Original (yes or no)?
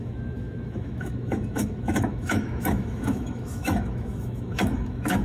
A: no